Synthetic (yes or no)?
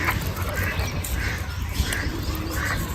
no